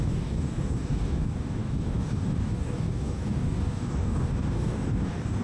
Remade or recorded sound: remade